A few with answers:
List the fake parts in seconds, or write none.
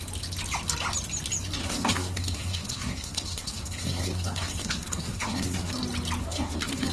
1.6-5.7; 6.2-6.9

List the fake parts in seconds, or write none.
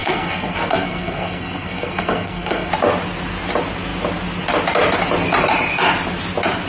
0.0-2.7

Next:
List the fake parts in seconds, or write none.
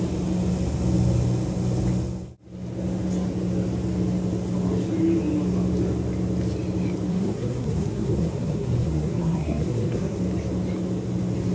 7.1-10.2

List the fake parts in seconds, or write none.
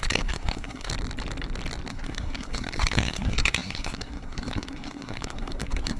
0.0-0.9; 1.9-6.0